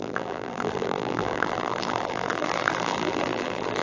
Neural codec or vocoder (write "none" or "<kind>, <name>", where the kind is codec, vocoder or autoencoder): vocoder, BigVGAN v2